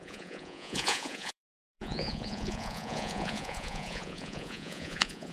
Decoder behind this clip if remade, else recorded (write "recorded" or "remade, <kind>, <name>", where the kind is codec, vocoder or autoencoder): remade, vocoder, Vocos